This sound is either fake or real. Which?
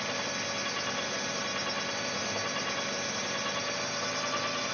real